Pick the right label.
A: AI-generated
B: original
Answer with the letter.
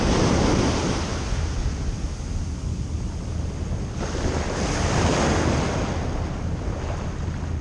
B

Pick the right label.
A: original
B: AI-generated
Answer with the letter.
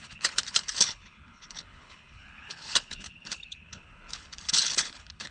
B